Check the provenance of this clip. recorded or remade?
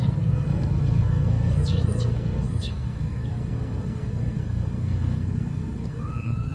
remade